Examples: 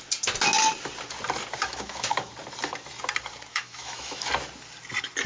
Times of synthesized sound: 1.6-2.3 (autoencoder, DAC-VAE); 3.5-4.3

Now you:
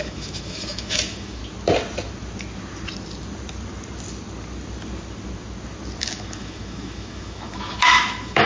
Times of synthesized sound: 0.0-1.4 (autoencoder, DAC-VAE); 6.0-8.5